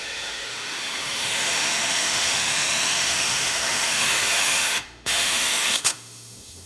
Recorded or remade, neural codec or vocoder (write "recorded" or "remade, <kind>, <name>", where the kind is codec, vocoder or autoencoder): remade, autoencoder, DAC-VAE